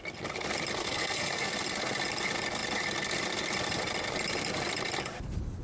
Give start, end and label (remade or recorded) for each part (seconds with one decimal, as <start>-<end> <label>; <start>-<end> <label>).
0.0-0.8 recorded; 0.8-1.5 remade; 1.5-5.6 recorded